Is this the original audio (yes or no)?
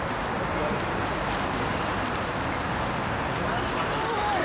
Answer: yes